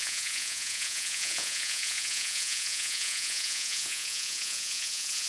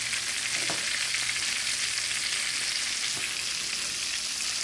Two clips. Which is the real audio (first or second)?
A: second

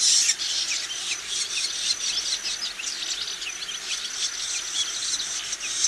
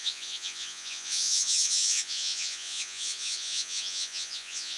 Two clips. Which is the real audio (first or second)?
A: first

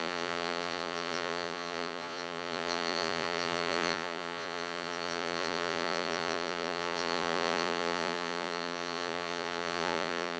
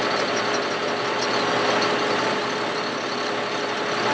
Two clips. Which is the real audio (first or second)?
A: second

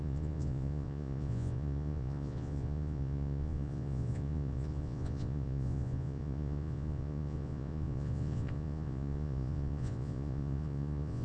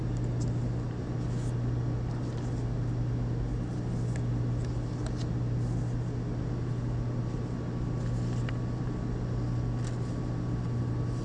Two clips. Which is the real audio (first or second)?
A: second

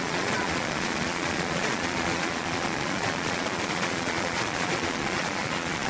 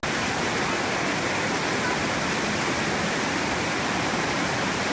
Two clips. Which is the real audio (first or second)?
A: second